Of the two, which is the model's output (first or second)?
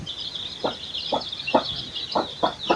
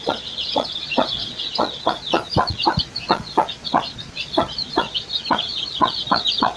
second